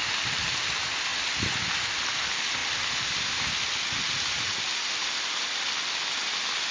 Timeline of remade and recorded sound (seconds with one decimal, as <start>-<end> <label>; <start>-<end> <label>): 0.0-6.7 recorded